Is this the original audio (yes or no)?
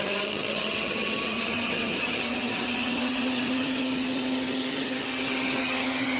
no